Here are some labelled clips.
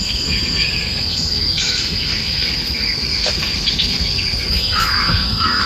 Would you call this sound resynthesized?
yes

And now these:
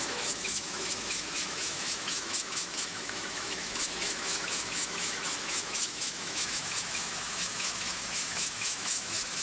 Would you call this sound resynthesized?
yes